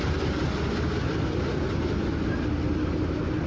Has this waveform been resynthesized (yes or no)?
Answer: no